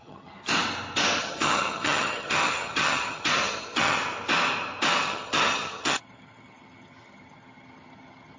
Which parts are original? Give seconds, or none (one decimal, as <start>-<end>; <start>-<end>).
0.5-1.2; 4.0-5.0